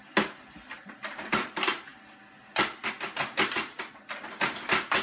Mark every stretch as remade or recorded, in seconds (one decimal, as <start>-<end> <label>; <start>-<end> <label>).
0.0-5.0 recorded